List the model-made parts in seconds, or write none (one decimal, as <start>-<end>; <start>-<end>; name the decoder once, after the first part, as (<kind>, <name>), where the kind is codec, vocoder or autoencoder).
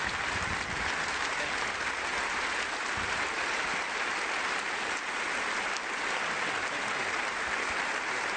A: none